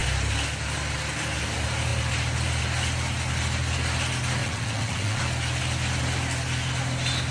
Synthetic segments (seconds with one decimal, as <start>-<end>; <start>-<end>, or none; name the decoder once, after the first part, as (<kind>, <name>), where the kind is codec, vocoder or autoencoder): 4.4-5.2 (vocoder, WaveNeXt)